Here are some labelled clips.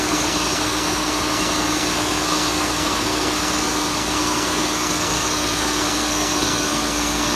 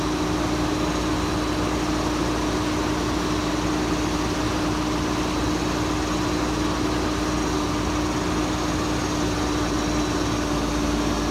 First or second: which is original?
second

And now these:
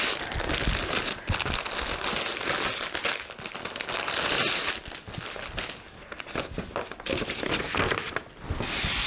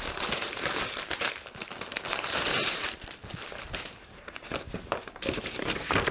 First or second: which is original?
first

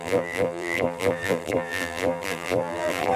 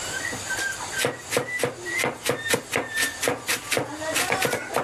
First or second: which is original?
second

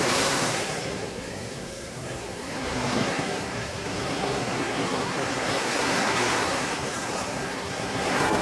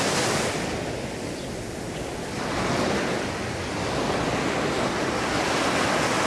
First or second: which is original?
second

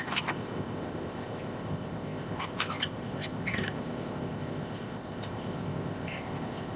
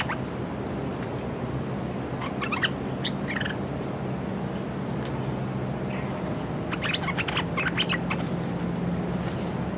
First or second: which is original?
second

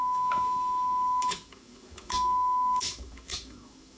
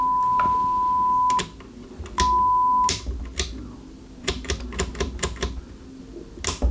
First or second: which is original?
second